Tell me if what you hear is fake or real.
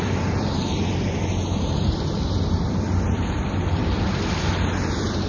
fake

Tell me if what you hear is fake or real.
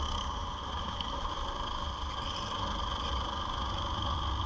real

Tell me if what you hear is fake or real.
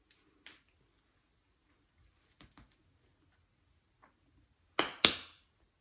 real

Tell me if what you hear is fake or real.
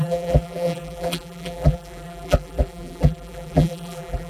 fake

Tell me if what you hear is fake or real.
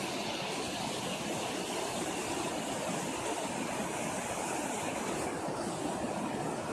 real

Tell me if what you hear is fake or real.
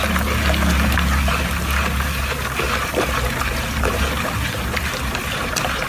real